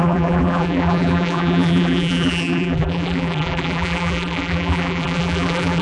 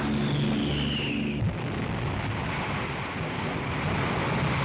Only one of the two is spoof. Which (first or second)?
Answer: first